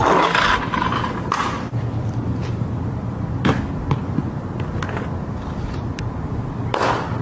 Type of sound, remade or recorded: recorded